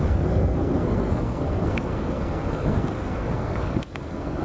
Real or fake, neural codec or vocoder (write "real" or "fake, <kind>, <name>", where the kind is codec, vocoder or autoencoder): fake, codec, SNAC